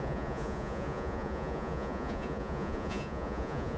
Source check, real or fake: fake